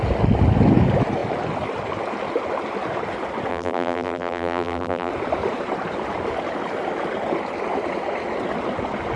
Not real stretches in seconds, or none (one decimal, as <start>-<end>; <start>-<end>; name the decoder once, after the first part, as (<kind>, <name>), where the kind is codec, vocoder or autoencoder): 3.5-5.1 (vocoder, BigVGAN v2)